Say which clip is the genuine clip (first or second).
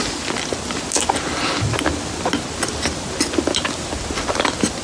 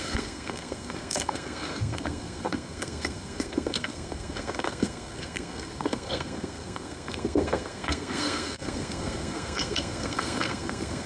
first